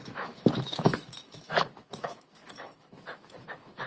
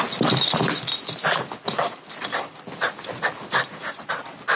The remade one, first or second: first